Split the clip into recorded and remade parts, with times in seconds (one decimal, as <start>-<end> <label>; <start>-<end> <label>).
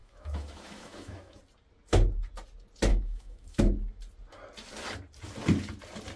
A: 0.0-1.4 remade; 1.4-2.9 recorded; 2.9-3.6 remade; 3.6-6.2 recorded